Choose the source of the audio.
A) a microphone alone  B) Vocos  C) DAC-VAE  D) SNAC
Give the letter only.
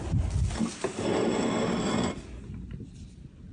A